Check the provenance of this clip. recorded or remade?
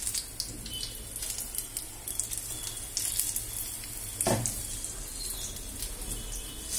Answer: recorded